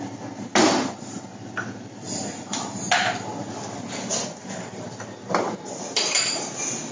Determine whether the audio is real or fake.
real